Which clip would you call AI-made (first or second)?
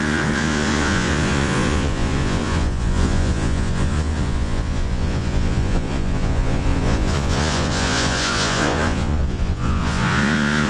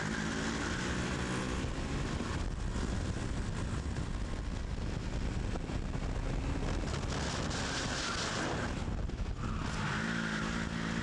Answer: first